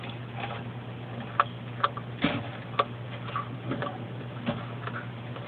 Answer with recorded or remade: recorded